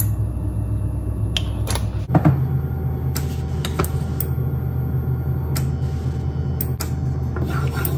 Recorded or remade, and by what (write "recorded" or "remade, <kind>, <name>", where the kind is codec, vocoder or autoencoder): recorded